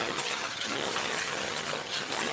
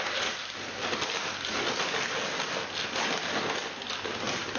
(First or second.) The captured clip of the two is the second